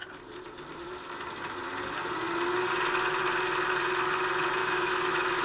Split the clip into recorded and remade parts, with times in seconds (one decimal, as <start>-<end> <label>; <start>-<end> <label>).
0.0-4.6 recorded; 4.6-5.4 remade